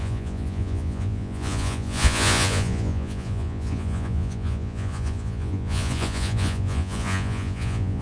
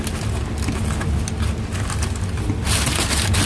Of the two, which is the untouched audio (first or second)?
second